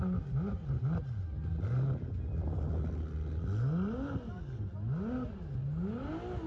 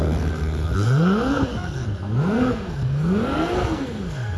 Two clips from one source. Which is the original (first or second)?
first